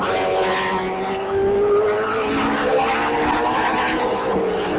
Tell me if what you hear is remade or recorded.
recorded